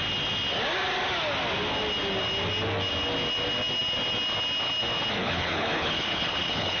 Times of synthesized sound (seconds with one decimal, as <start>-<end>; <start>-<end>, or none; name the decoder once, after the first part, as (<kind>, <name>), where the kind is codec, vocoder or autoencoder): 5.2-6.8 (codec, HILCodec)